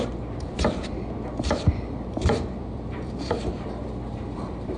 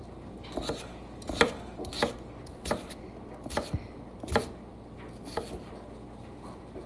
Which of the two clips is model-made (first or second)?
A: first